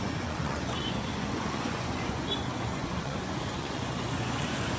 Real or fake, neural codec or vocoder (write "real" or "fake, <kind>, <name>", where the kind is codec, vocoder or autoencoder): fake, vocoder, Vocos